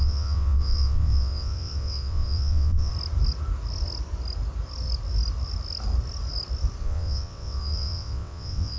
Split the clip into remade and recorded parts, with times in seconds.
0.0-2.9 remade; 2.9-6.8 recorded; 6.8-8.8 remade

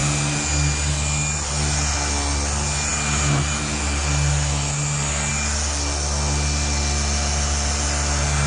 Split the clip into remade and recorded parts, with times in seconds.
0.0-8.5 recorded

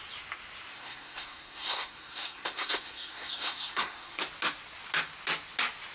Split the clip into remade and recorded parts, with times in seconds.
0.0-0.7 recorded; 0.7-4.2 remade; 4.2-5.9 recorded

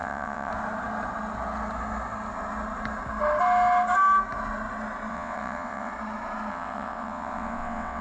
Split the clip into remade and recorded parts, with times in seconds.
0.0-0.5 remade; 0.5-5.1 recorded; 5.1-5.9 remade; 5.9-6.5 recorded; 6.5-8.0 remade

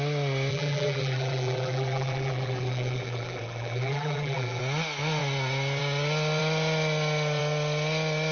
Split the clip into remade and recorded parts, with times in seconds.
0.0-0.5 recorded; 0.5-4.6 remade; 4.6-8.3 recorded

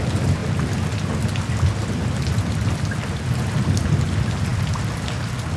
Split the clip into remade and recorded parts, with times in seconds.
0.0-5.6 recorded

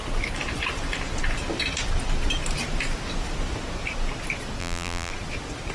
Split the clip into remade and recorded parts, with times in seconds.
0.0-4.6 recorded; 4.6-5.1 remade; 5.1-5.7 recorded